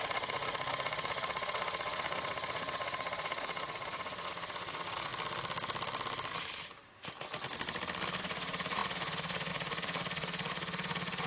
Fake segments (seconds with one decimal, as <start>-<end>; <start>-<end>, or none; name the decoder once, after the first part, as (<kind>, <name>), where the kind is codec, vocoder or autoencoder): 0.0-5.1 (vocoder, Vocos); 8.2-11.3